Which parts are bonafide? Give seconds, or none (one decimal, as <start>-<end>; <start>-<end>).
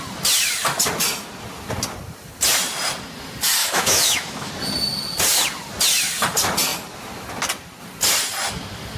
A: 0.0-3.6; 4.5-9.0